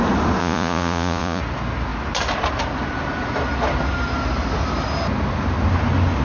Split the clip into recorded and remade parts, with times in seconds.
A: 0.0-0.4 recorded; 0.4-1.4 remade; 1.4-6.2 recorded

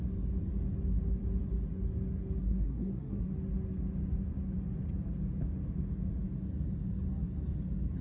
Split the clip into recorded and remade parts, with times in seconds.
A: 0.0-2.4 recorded; 2.4-3.3 remade; 3.3-8.0 recorded

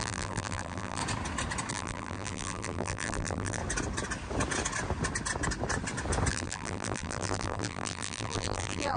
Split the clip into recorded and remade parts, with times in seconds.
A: 0.0-1.0 remade; 1.0-1.7 recorded; 1.7-3.6 remade; 3.6-6.3 recorded; 6.3-9.0 remade